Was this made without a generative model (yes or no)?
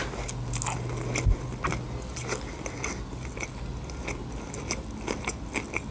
yes